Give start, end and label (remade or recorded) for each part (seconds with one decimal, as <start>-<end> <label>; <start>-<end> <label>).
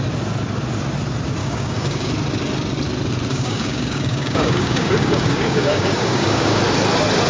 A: 0.0-1.4 recorded; 1.4-2.1 remade; 2.1-3.3 recorded; 3.3-6.6 remade; 6.6-7.3 recorded